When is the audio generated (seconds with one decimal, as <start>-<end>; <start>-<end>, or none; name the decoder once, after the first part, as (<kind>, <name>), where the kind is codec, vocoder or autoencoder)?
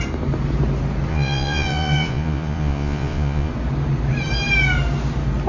1.1-3.5 (vocoder, Vocos)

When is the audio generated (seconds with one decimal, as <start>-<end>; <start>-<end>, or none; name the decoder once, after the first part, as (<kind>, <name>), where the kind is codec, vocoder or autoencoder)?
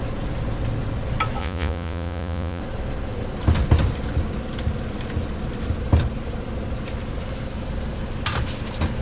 1.4-2.6 (vocoder, Vocos)